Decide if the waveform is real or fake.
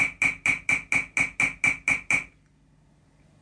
real